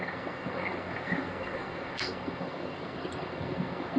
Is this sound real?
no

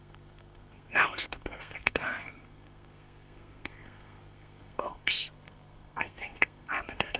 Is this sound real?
no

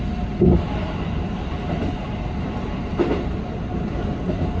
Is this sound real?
yes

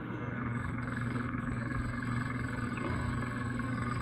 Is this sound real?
no